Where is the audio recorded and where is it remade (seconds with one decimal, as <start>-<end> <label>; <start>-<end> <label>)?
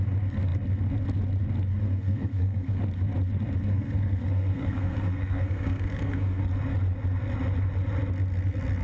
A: 0.0-1.8 recorded; 1.8-2.8 remade; 2.8-3.7 recorded; 3.7-6.4 remade; 6.4-8.8 recorded